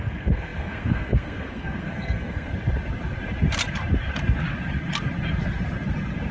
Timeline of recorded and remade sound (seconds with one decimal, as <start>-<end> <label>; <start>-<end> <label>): 0.0-2.5 remade; 2.5-6.3 recorded